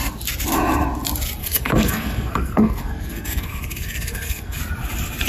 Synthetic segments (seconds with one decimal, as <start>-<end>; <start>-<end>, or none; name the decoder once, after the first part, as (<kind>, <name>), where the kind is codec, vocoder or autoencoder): 1.4-4.6 (codec, SNAC)